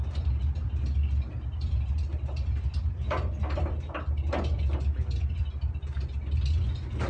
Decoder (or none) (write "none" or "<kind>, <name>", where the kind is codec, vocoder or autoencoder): none